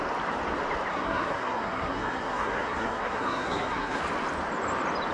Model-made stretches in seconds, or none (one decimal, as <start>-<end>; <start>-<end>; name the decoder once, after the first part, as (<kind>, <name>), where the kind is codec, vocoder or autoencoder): 0.9-4.0 (codec, SNAC)